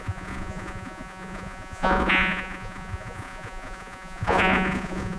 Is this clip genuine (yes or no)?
no